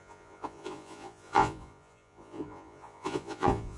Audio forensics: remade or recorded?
remade